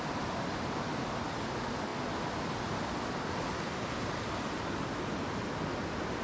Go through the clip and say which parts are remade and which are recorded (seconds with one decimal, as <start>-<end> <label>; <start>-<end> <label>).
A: 0.0-6.2 recorded